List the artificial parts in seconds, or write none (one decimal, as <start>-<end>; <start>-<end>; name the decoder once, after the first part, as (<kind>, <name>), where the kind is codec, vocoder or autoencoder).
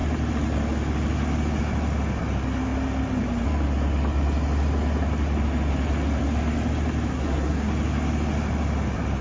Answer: 7.1-7.7 (codec, SNAC)